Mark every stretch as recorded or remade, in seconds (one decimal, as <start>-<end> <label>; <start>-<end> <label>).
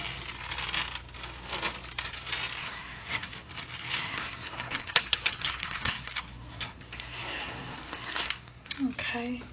0.0-2.6 recorded; 2.6-3.5 remade; 3.5-4.0 recorded; 4.0-8.7 remade; 8.7-9.5 recorded